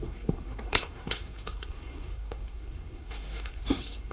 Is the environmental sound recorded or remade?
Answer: remade